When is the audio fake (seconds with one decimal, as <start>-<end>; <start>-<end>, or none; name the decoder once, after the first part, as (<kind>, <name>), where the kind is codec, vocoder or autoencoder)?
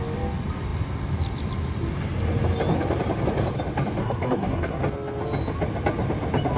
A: 4.0-4.8 (codec, SNAC)